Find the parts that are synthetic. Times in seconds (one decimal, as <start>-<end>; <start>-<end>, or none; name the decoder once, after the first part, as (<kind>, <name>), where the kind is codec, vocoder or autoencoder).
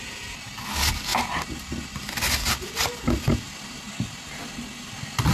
none